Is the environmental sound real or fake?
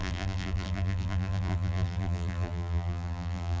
fake